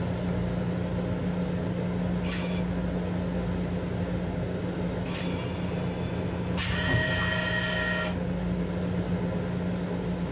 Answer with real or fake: real